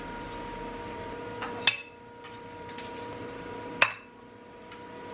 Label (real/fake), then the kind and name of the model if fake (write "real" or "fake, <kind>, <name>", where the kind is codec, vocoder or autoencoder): real